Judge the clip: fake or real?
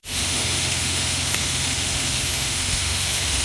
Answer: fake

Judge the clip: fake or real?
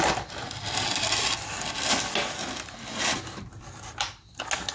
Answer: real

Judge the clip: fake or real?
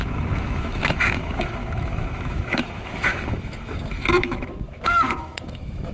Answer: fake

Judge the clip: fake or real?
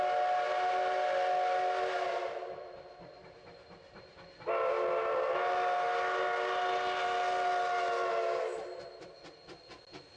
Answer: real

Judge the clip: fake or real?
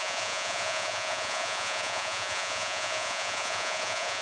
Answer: fake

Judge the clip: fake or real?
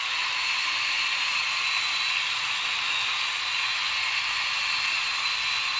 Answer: real